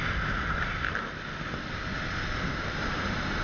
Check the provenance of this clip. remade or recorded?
recorded